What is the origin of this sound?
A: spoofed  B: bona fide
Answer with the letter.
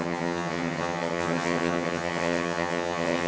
A